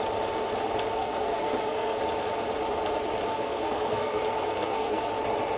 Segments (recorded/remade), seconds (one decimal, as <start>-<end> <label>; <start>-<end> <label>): 0.0-1.0 recorded; 1.0-2.0 remade; 2.0-3.3 recorded; 3.3-5.1 remade; 5.1-5.6 recorded